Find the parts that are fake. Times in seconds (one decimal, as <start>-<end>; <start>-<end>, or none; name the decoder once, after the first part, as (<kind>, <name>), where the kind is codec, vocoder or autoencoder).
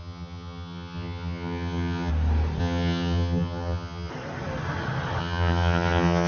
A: 0.0-2.1 (vocoder, HiFi-GAN); 2.6-4.1; 5.2-6.3